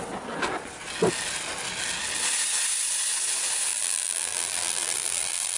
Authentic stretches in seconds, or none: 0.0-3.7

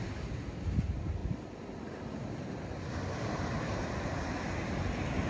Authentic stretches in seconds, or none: 0.0-5.3

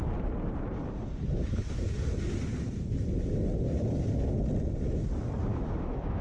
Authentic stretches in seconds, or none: 0.0-5.5

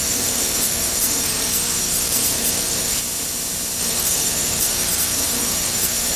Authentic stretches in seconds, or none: 3.0-3.8

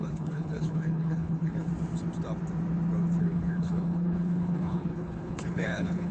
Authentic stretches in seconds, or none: 1.7-3.2

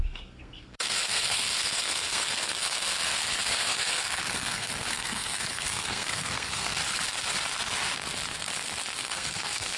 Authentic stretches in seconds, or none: 6.8-9.0

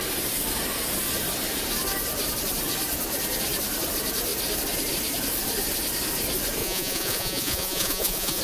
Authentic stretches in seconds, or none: 0.0-6.6

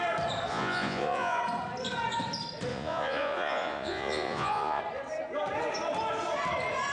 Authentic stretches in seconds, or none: 0.0-0.5; 1.4-2.7; 4.8-6.9